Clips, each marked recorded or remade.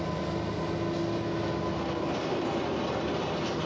recorded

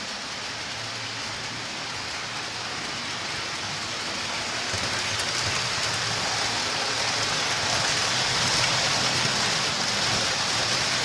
recorded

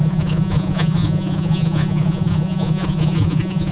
remade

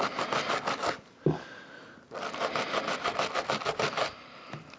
recorded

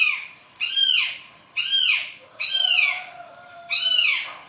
remade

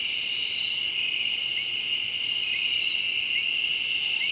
recorded